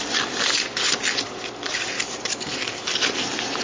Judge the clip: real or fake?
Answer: real